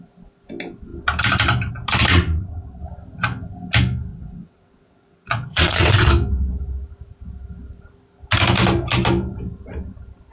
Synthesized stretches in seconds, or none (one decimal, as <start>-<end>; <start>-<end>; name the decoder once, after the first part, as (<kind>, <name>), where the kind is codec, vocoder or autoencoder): 2.1-2.8 (vocoder, WaveNeXt); 4.1-6.1